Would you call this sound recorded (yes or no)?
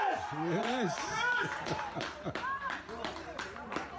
no